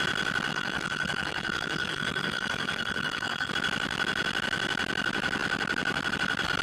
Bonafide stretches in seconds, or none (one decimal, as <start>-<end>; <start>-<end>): 0.0-0.5; 3.5-6.6